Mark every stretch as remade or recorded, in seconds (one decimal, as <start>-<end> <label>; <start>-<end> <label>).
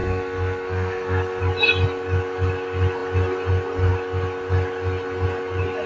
0.0-1.4 remade; 1.4-5.9 recorded